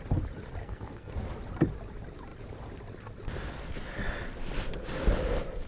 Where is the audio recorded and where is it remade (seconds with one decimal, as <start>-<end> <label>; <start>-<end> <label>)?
0.0-0.6 recorded; 0.6-1.1 remade; 1.1-5.7 recorded